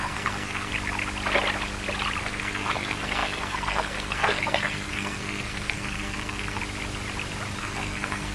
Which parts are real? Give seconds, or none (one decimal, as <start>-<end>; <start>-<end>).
0.7-2.2; 6.6-7.6